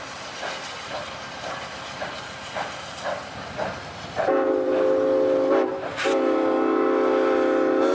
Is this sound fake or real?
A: real